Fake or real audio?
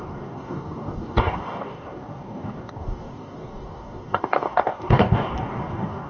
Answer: fake